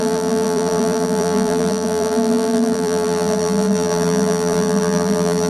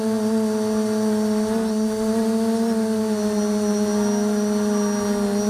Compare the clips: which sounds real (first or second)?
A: second